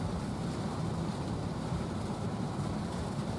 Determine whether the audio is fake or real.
fake